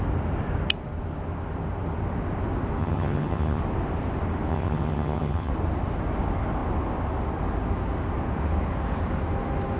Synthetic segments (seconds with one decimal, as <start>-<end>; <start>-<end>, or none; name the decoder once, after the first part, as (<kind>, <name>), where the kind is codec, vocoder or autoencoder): 2.8-3.6 (vocoder, HiFi-GAN); 4.5-5.5